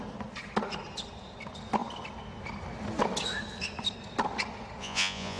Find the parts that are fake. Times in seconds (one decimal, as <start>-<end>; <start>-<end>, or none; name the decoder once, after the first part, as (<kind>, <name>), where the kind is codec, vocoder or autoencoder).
4.8-5.4 (vocoder, Vocos)